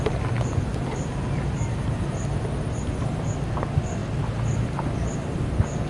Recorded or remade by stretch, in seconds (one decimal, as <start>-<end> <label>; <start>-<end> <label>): 0.0-5.9 recorded